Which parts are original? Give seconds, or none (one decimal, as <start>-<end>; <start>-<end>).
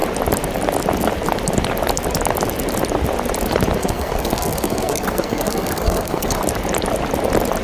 0.0-3.8; 6.4-7.6